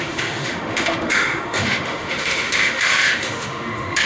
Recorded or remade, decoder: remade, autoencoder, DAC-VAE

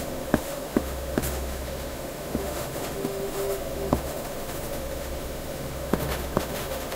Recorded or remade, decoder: remade, autoencoder, DAC-VAE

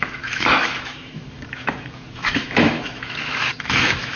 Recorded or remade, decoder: remade, autoencoder, DAC-VAE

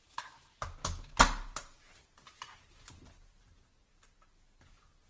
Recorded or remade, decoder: recorded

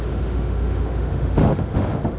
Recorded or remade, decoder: remade, autoencoder, DAC-VAE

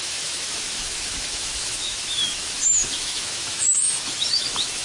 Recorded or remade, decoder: remade, autoencoder, DAC-VAE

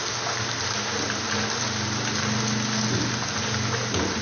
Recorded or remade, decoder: recorded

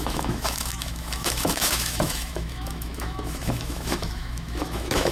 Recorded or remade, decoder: remade, autoencoder, DAC-VAE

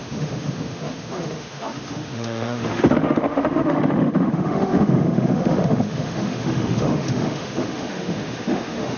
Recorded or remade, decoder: remade, autoencoder, DAC-VAE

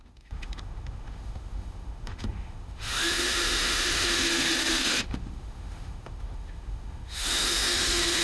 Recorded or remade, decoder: remade, autoencoder, DAC-VAE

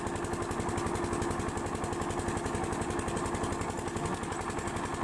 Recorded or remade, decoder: recorded